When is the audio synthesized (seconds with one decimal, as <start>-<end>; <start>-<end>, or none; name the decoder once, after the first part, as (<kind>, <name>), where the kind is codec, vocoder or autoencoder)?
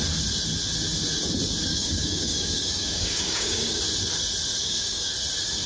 1.7-3.8 (codec, DAC); 4.6-5.1